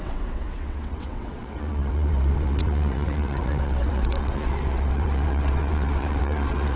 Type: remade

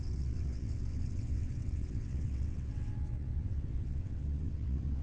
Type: remade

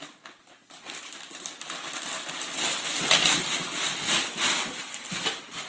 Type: recorded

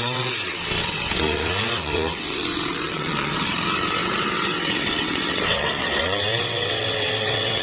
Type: remade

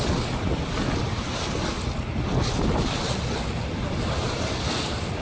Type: recorded